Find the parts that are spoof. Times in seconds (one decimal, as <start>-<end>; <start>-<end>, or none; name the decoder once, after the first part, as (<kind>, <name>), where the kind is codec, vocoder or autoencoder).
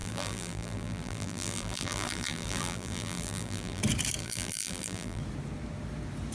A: 0.0-3.8 (vocoder, BigVGAN v2); 4.2-5.2